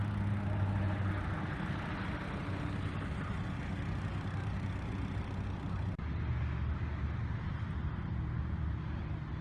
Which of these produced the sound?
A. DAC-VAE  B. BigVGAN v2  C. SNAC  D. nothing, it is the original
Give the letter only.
D